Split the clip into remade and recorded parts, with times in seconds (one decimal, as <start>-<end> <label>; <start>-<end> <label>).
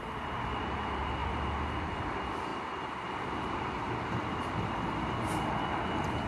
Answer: 0.0-6.3 recorded